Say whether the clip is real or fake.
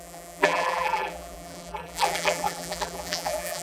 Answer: fake